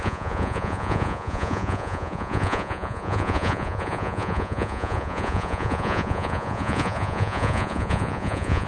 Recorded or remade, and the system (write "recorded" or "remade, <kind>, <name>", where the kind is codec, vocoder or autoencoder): remade, vocoder, Vocos